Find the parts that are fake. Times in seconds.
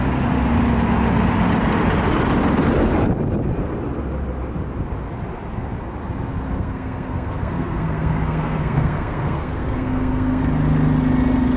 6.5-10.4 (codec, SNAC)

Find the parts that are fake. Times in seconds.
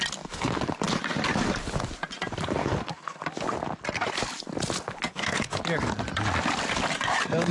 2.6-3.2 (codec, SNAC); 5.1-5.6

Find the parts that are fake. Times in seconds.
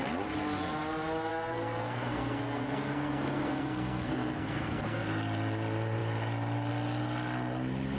1.3-5.0 (codec, SNAC)